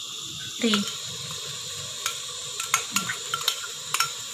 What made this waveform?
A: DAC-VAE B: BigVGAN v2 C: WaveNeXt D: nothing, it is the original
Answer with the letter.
B